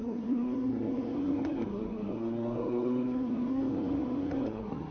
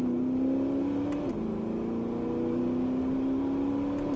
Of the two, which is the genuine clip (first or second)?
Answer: second